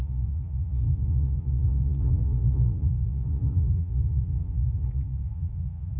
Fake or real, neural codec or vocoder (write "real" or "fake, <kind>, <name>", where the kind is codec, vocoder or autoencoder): fake, vocoder, Vocos